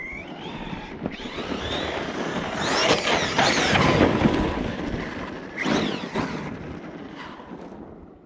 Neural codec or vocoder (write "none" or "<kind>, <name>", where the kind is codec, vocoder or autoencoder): none